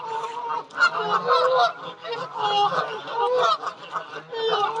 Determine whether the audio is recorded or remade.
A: recorded